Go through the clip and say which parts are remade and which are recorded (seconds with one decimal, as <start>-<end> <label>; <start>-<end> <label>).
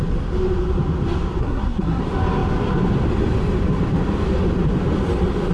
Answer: 0.0-1.4 recorded; 1.4-2.0 remade; 2.0-5.5 recorded